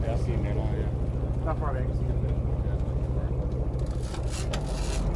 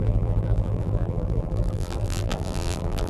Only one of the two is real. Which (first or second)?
first